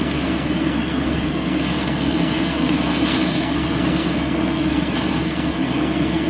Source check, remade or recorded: remade